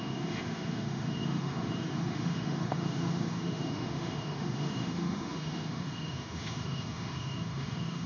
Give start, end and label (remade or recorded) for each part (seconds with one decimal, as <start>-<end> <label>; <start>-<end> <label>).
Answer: 0.0-8.1 remade

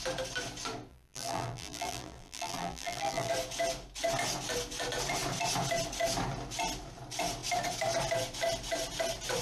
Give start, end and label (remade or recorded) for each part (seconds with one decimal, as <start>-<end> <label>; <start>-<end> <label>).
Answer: 0.0-0.9 recorded; 0.9-3.3 remade; 3.3-9.4 recorded

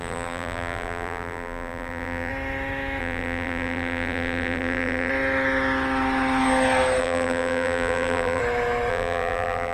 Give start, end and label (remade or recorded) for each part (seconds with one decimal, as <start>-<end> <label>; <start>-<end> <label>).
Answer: 0.0-2.3 remade; 2.3-3.0 recorded; 3.0-5.1 remade; 5.1-7.0 recorded; 7.0-8.4 remade; 8.4-8.9 recorded; 8.9-9.7 remade

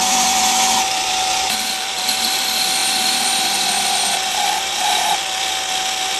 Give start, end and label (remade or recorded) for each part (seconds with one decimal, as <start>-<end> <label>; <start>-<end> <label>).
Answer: 0.0-2.8 remade; 2.8-3.4 recorded; 3.4-5.5 remade; 5.5-6.2 recorded